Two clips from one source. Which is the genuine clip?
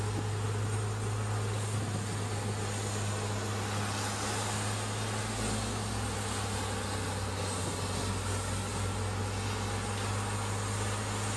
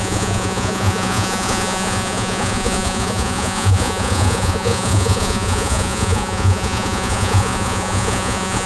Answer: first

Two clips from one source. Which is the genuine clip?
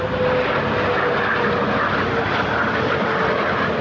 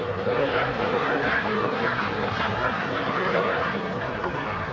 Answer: first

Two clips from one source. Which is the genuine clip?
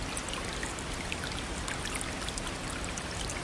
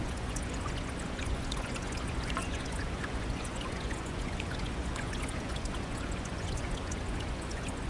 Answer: first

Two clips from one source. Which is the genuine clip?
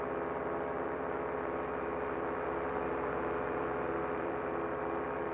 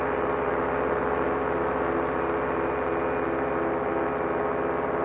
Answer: second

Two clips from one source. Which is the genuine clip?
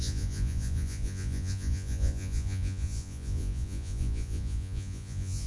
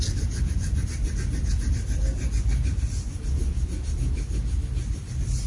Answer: second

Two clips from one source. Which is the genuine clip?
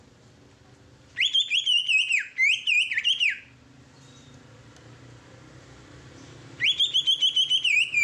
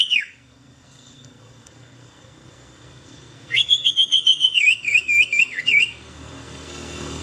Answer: first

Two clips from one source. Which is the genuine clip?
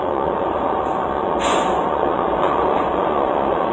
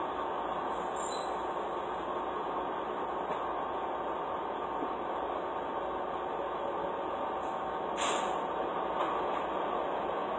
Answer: second